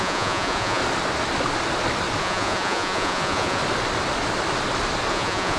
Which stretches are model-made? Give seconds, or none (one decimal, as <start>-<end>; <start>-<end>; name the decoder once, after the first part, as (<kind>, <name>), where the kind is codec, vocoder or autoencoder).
0.0-0.8 (vocoder, Vocos); 2.2-3.6; 5.1-5.6